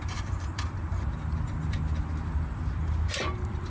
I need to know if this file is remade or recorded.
remade